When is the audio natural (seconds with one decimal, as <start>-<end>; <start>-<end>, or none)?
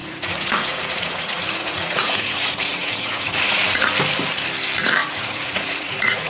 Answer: 3.8-5.0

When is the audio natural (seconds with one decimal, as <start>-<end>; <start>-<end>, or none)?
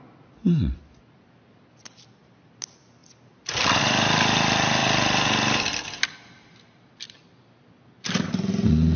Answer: 0.0-9.0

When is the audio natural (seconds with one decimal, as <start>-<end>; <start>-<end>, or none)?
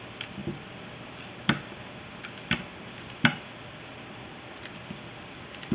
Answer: 0.0-5.7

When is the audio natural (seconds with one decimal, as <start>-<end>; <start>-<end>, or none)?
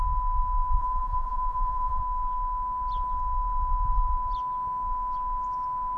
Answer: 0.0-0.8; 2.0-6.0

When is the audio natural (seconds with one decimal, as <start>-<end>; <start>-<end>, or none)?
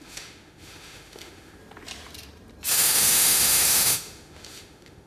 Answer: 1.6-2.7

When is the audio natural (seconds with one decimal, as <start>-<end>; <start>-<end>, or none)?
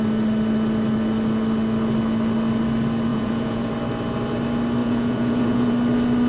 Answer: 0.0-3.1; 3.7-4.8; 5.7-6.3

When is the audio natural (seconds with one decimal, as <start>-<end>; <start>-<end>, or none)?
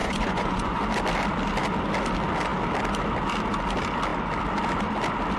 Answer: 0.8-5.4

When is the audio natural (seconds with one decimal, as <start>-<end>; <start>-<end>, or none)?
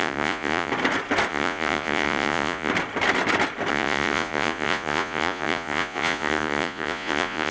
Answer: 0.7-1.3; 2.7-3.7